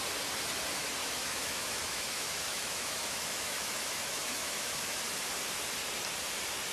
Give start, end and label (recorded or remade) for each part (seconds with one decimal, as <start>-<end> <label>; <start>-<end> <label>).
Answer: 0.0-1.0 recorded; 1.0-5.0 remade; 5.0-6.7 recorded